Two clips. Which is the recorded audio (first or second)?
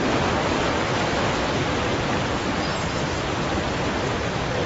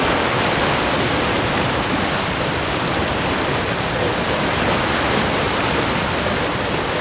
first